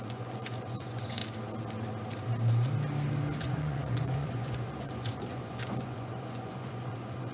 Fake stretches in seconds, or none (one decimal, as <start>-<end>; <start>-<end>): 0.0-1.2; 3.4-7.3